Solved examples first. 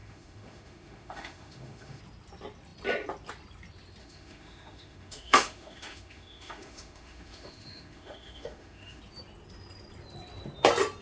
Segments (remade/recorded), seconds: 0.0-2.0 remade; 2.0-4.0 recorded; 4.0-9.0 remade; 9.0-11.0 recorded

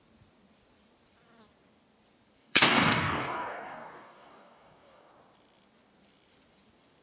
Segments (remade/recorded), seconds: 0.0-2.4 recorded; 2.4-5.1 remade; 5.1-7.0 recorded

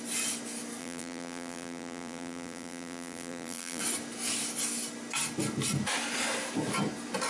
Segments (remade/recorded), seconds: 0.0-0.8 recorded; 0.8-3.8 remade; 3.8-7.3 recorded